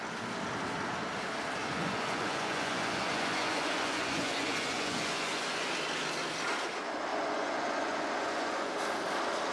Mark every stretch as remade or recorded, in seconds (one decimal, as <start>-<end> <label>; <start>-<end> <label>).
0.0-1.6 recorded; 1.6-5.7 remade; 5.7-7.1 recorded; 7.1-8.7 remade; 8.7-9.5 recorded